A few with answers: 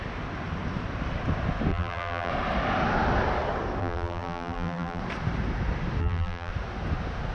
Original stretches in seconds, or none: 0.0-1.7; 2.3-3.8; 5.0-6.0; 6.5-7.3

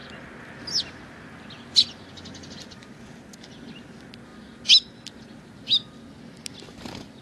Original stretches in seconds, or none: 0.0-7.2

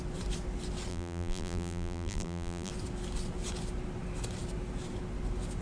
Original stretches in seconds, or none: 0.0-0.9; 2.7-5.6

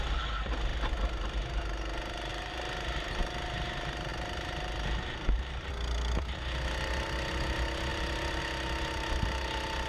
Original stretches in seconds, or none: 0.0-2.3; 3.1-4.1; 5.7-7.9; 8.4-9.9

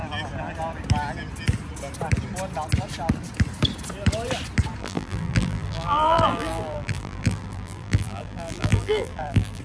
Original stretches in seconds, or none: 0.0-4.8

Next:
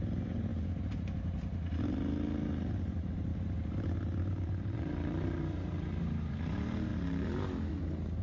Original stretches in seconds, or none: 0.5-2.9; 3.3-4.2; 6.9-8.2

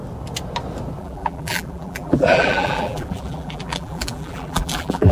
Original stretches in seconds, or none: 0.0-1.0